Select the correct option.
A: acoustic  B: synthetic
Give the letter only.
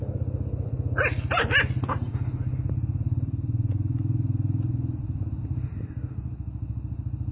A